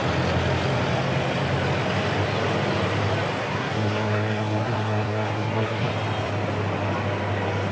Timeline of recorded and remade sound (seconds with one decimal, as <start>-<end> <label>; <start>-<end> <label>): 0.0-3.4 recorded; 3.4-5.9 remade; 5.9-7.7 recorded